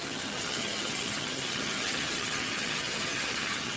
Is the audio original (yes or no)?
no